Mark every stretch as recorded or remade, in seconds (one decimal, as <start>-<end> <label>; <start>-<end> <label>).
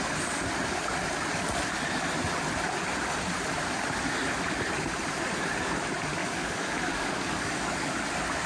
0.0-6.2 recorded; 6.2-8.1 remade; 8.1-8.5 recorded